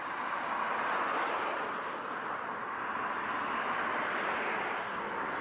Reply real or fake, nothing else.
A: real